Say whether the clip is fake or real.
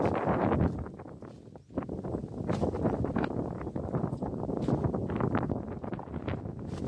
real